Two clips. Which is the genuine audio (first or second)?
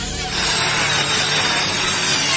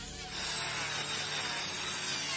second